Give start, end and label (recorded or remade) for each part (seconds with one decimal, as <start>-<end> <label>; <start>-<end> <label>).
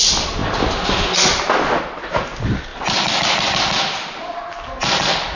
0.0-5.4 recorded